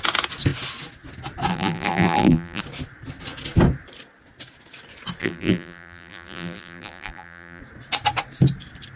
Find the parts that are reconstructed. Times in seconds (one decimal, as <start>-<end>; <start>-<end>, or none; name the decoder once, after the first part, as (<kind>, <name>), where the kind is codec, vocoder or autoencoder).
1.5-2.6 (vocoder, BigVGAN v2); 5.2-7.6